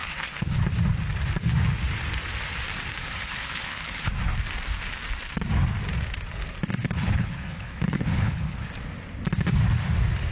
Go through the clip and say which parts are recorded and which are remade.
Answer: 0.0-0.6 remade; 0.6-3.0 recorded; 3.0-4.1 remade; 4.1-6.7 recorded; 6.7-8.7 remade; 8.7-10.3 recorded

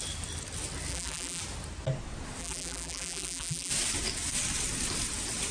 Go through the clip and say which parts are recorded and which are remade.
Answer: 0.0-0.9 recorded; 0.9-1.4 remade; 1.4-2.4 recorded; 2.4-3.7 remade; 3.7-5.5 recorded

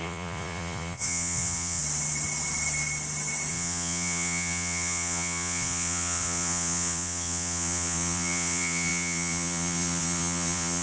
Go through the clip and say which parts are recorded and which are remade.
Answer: 0.0-1.8 remade; 1.8-3.5 recorded; 3.5-10.8 remade

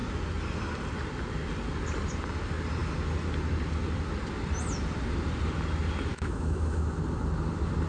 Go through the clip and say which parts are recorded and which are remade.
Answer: 0.0-6.1 recorded; 6.1-7.0 remade; 7.0-7.9 recorded

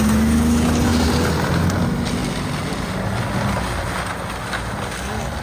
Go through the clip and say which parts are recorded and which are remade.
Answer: 0.0-5.4 recorded